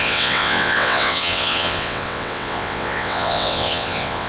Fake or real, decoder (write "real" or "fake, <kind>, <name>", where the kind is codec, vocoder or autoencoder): fake, vocoder, WaveNeXt